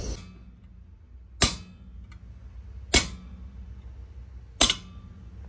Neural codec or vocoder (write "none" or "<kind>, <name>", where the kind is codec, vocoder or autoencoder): none